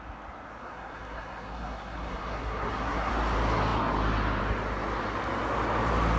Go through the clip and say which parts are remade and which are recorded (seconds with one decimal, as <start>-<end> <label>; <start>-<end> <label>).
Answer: 0.0-0.6 recorded; 0.6-3.1 remade; 3.1-6.2 recorded